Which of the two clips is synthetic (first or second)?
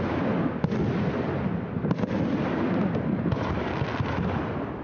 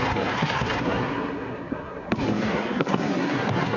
second